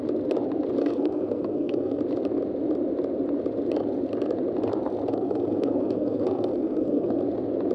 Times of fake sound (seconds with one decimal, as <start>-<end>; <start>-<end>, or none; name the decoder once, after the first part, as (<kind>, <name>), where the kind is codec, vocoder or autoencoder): 0.8-2.0 (codec, SNAC); 5.1-7.2